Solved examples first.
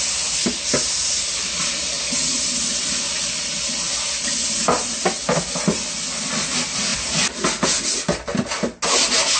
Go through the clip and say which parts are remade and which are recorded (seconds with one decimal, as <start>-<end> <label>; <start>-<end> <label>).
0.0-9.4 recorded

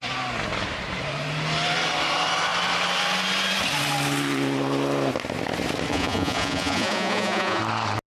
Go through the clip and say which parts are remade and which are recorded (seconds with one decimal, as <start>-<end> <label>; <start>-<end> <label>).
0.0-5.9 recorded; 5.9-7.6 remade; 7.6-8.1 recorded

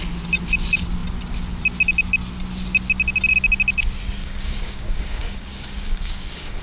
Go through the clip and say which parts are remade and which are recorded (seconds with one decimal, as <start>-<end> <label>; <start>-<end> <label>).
0.0-4.2 recorded; 4.2-6.6 remade

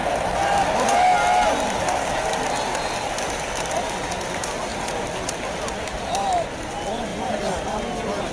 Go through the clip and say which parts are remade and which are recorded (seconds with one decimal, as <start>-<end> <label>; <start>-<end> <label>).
0.0-5.9 recorded; 5.9-6.5 remade; 6.5-8.3 recorded